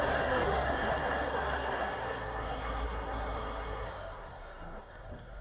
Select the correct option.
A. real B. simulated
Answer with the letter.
B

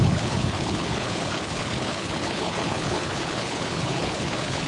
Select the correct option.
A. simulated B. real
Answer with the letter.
A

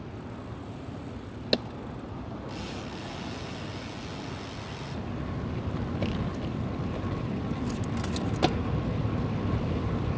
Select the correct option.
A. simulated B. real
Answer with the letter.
B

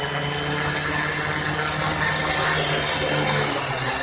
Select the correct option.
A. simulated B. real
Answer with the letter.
B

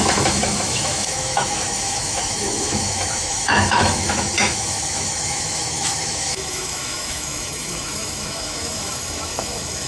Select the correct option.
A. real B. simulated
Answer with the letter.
B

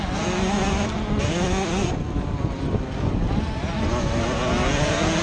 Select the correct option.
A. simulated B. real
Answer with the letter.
B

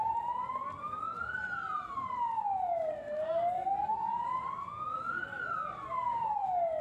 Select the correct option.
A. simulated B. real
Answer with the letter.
B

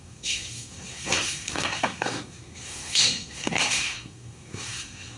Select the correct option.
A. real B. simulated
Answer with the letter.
B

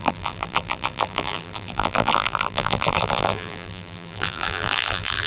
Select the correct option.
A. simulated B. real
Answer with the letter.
A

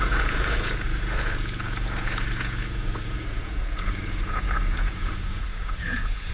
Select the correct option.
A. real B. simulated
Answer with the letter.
B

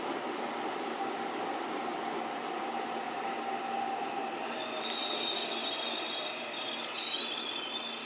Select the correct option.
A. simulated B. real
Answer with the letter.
B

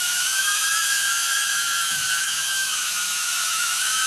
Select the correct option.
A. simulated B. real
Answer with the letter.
A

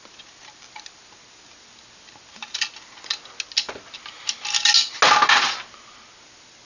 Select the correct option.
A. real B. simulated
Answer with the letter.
A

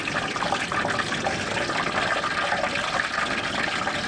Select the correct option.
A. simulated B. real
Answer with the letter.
B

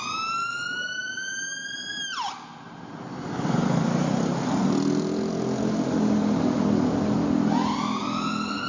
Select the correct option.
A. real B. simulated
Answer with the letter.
A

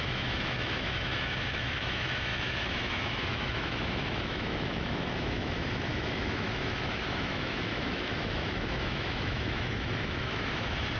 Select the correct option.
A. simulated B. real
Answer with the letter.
A